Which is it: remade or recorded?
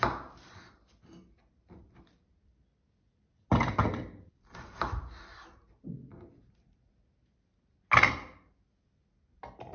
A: recorded